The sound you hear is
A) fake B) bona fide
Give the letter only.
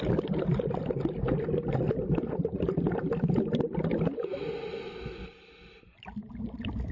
B